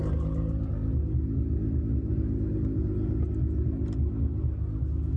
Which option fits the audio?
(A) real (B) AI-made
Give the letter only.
A